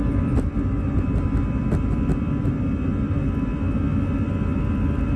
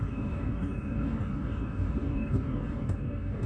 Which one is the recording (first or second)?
first